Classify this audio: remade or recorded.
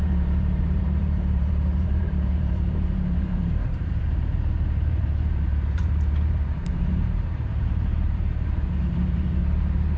remade